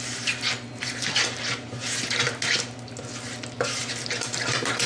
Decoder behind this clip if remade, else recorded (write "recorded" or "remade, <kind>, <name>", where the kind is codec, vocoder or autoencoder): recorded